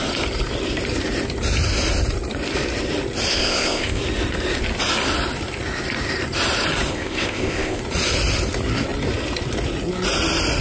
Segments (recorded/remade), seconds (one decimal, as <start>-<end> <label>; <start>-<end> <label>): 0.0-3.3 recorded; 3.3-4.0 remade; 4.0-6.9 recorded; 6.9-7.8 remade; 7.8-10.6 recorded